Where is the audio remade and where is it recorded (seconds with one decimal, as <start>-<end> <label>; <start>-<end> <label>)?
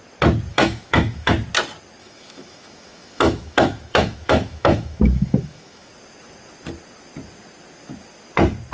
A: 0.0-0.5 recorded; 0.5-1.3 remade; 1.3-2.0 recorded; 2.0-5.9 remade; 5.9-8.7 recorded